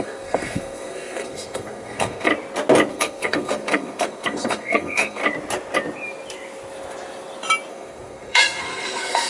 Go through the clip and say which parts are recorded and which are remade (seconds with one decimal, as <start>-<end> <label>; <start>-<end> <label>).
0.0-2.3 remade; 2.3-2.9 recorded; 2.9-5.2 remade; 5.2-7.7 recorded; 7.7-9.3 remade